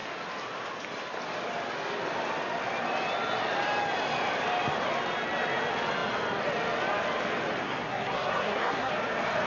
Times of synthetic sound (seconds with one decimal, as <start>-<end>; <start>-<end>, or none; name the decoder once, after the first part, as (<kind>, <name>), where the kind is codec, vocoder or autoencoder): 7.6-8.9 (codec, SNAC)